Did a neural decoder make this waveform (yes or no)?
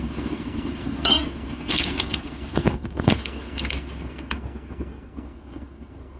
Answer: yes